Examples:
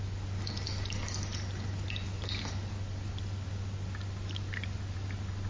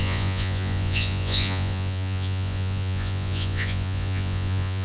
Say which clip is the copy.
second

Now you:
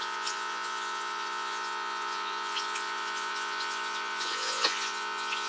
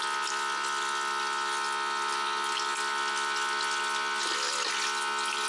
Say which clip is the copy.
first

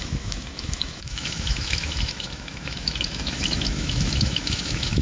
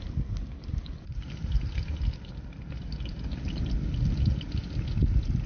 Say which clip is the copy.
first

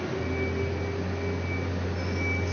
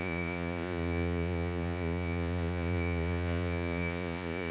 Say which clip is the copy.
second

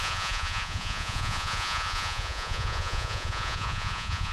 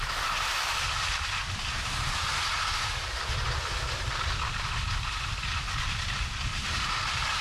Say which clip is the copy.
first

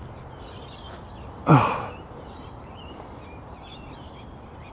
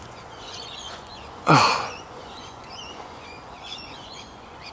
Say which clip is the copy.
second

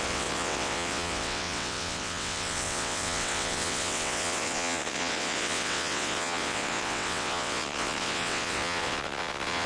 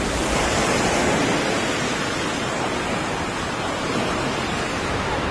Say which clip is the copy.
first